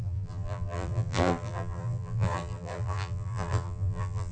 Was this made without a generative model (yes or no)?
no